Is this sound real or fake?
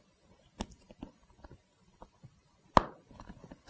real